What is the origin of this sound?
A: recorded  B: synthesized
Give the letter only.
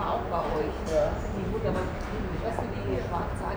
A